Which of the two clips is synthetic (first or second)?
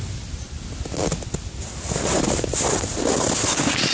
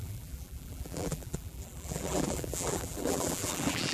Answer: second